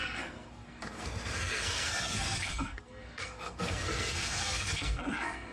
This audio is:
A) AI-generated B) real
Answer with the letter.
A